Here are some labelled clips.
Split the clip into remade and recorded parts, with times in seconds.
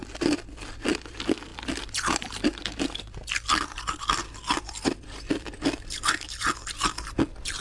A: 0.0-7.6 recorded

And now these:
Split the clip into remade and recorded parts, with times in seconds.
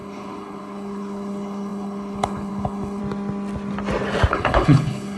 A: 0.0-3.0 remade; 3.0-4.3 recorded; 4.3-5.2 remade